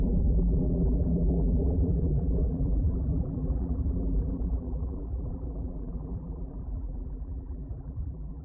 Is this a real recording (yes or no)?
no